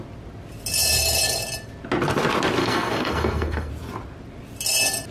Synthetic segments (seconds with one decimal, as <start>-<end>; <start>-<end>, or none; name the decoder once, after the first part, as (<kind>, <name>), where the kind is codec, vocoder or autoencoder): 2.6-3.7 (codec, SNAC)